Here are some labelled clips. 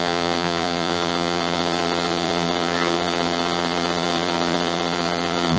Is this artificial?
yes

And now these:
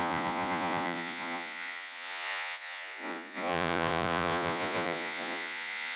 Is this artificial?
yes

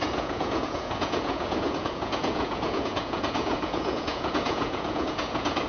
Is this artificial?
yes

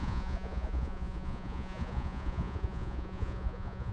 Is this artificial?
yes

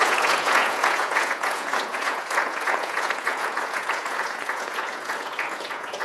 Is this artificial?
yes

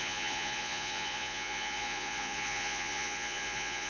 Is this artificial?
yes